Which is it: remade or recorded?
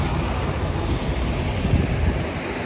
recorded